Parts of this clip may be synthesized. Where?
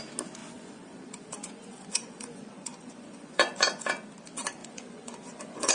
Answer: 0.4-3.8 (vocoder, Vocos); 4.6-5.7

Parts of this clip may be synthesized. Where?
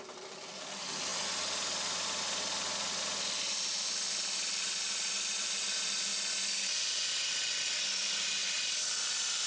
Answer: 0.0-1.1 (vocoder, BigVGAN v2); 3.0-6.1; 6.7-8.4; 9.0-9.5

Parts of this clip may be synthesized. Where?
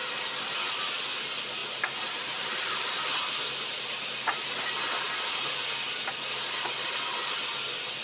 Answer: 1.6-3.0 (vocoder, BigVGAN v2)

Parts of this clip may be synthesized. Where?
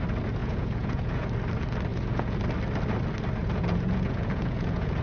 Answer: 0.4-1.3 (vocoder, Vocos); 1.9-2.4; 3.4-5.0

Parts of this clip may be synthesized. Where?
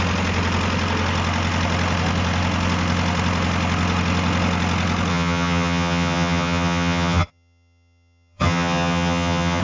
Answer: 5.1-9.6 (vocoder, HiFi-GAN)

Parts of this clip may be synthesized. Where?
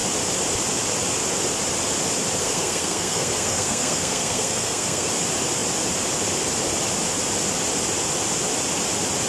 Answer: 2.4-5.1 (codec, SNAC)